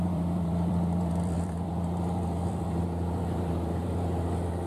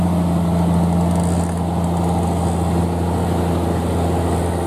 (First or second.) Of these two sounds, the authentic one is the second